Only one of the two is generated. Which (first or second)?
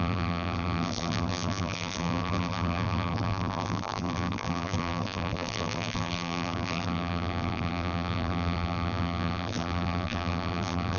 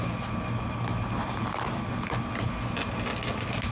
first